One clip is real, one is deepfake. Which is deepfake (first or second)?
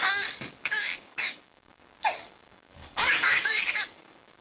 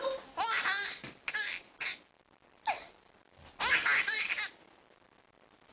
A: first